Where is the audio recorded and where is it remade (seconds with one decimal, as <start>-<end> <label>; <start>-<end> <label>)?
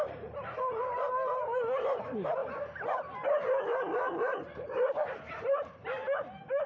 0.0-2.4 remade; 2.4-5.0 recorded; 5.0-5.8 remade; 5.8-6.7 recorded